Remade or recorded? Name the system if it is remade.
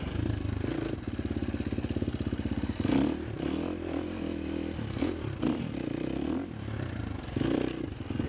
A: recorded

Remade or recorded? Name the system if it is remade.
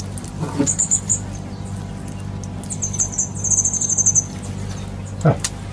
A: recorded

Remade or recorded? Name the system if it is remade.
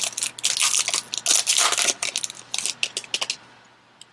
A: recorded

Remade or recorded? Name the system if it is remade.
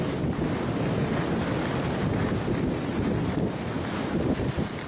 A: recorded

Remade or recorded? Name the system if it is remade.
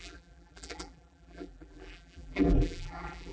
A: remade, vocoder, BigVGAN v2